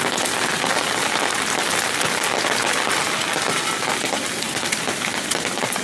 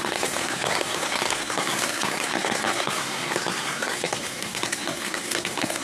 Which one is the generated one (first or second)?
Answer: second